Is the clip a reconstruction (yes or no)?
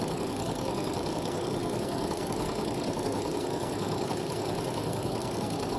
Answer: yes